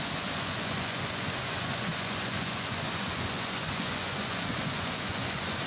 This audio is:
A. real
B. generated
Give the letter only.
B